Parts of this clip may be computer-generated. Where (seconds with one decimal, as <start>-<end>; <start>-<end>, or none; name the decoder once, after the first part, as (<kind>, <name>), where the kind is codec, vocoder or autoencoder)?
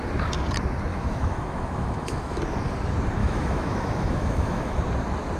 0.9-2.4 (autoencoder, DAC-VAE); 3.2-4.8